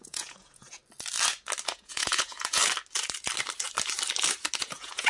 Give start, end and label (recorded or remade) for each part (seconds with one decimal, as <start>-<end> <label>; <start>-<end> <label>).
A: 0.0-0.8 remade; 0.8-1.7 recorded; 1.7-2.6 remade; 2.6-4.6 recorded; 4.6-5.1 remade